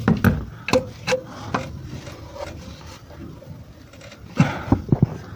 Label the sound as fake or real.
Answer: real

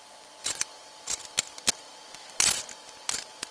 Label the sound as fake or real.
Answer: real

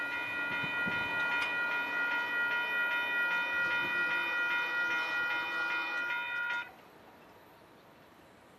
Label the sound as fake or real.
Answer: real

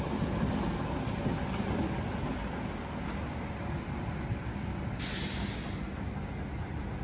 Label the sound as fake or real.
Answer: real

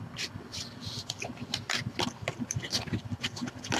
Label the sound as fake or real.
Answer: real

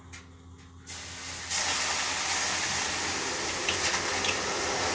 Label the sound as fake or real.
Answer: real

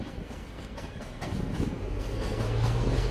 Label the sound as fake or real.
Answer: fake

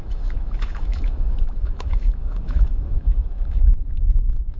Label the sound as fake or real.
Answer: fake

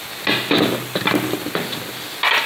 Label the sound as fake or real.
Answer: real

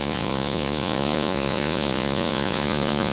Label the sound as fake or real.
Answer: fake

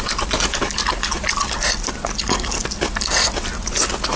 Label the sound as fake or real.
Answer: real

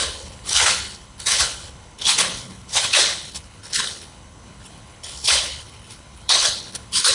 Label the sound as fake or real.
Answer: fake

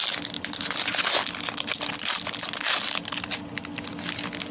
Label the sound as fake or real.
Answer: real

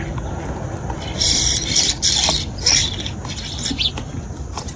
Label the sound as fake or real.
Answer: real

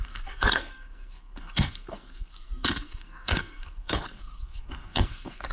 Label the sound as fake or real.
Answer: fake